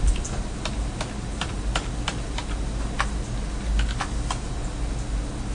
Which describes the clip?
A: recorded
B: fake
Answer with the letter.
A